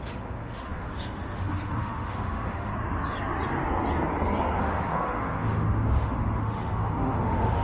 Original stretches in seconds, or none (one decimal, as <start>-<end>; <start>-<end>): 2.7-4.6